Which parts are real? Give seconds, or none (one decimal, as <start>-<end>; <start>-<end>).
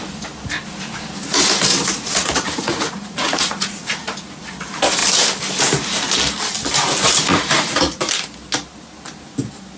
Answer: 0.0-2.2; 4.1-7.3; 8.0-9.8